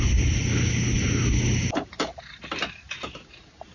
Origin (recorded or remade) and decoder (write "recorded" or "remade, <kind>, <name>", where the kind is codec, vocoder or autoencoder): recorded